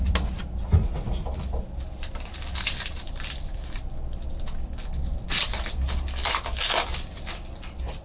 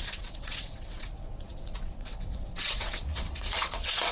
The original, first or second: first